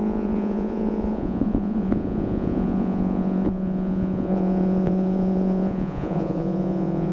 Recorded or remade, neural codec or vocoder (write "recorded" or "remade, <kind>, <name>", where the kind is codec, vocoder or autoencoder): remade, vocoder, Vocos